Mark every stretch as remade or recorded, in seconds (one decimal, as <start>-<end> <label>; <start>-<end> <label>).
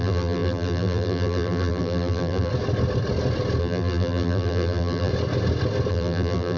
0.0-2.5 remade; 2.5-3.6 recorded; 3.6-5.1 remade; 5.1-5.9 recorded; 5.9-6.6 remade